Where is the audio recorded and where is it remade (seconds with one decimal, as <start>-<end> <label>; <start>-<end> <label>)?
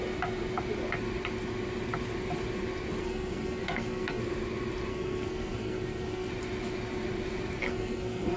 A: 0.0-3.0 recorded; 3.0-4.2 remade; 4.2-4.9 recorded; 4.9-6.3 remade; 6.3-7.6 recorded; 7.6-8.4 remade